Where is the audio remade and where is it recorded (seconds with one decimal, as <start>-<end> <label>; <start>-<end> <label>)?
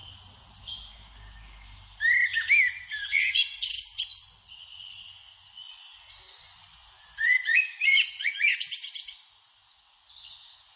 0.0-0.6 recorded; 0.6-1.0 remade; 1.0-3.0 recorded; 3.0-10.8 remade